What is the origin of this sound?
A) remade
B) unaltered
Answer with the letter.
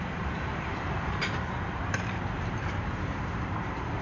A